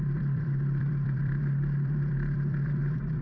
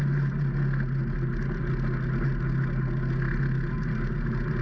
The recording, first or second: second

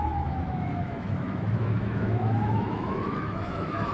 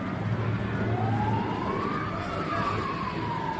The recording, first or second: second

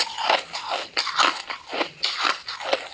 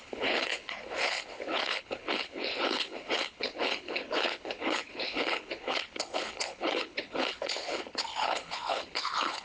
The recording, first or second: first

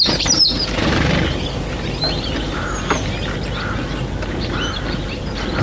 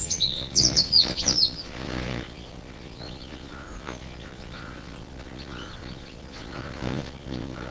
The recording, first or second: first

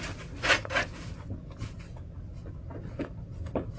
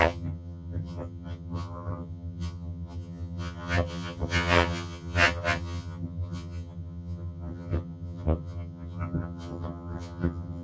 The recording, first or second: first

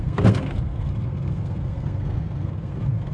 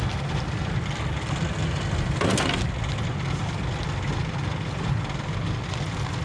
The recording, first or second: second